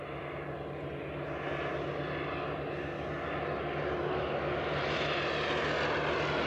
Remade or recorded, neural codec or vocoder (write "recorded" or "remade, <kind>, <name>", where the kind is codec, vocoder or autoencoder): recorded